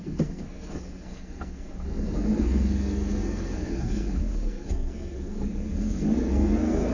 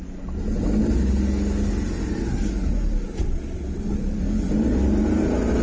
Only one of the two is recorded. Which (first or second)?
second